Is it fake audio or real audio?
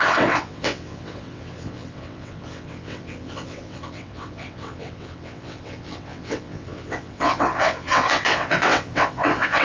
fake